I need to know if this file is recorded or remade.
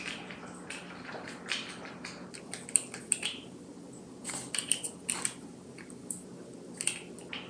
recorded